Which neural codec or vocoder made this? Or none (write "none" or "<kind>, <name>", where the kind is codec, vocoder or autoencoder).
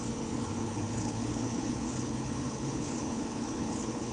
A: codec, HILCodec